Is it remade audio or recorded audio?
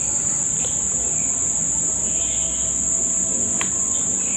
recorded